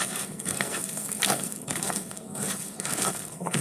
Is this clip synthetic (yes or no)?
yes